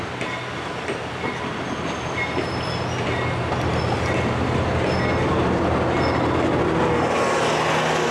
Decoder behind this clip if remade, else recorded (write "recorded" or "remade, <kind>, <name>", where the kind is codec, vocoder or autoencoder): recorded